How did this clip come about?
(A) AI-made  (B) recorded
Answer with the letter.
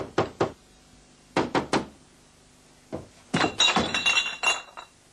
B